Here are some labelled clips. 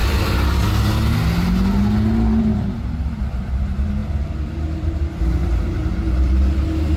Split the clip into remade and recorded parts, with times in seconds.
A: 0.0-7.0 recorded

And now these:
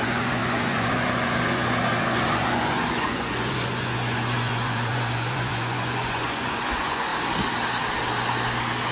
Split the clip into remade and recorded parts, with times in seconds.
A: 0.0-7.1 remade; 7.1-8.9 recorded